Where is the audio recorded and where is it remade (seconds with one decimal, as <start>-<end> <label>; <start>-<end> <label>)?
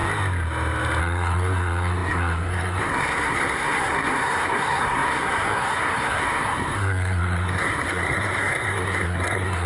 0.0-1.0 recorded; 1.0-9.7 remade